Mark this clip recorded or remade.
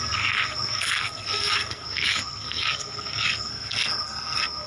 remade